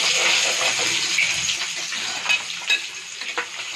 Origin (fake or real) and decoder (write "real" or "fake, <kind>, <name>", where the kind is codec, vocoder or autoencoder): real